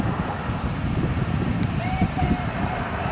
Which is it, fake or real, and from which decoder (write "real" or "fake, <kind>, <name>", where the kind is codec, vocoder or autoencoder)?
fake, vocoder, BigVGAN v2